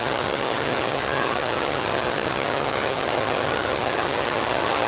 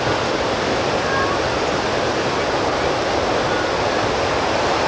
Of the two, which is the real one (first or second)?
second